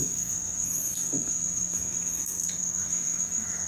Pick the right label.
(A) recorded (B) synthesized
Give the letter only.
B